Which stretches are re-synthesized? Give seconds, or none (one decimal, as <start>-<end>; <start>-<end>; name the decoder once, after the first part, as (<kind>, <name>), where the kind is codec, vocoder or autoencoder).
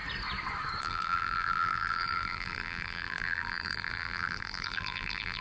0.8-5.4 (vocoder, BigVGAN v2)